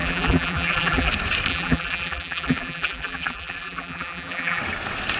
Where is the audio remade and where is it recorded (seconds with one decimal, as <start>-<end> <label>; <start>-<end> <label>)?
0.0-1.1 remade; 1.1-1.5 recorded; 1.5-4.6 remade; 4.6-5.2 recorded